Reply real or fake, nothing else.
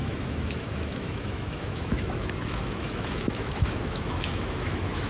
fake